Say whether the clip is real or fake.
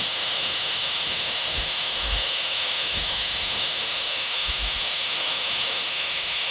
fake